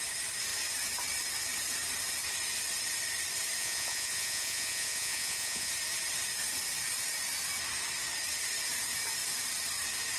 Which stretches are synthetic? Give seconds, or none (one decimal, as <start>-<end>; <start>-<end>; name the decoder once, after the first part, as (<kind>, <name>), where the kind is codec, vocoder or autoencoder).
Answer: 3.6-5.7 (vocoder, Vocos)